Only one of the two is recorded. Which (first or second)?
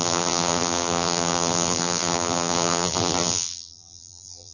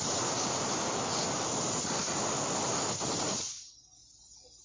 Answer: second